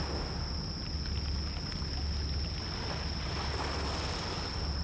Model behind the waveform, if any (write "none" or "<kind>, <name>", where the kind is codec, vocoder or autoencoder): none